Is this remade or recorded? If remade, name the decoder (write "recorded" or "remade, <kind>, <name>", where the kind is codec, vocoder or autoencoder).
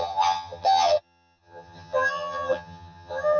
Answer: remade, vocoder, HiFi-GAN